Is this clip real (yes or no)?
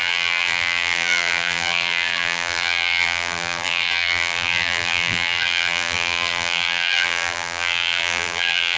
no